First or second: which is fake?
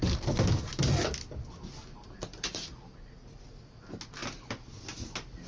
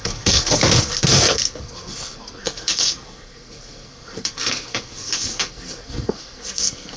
second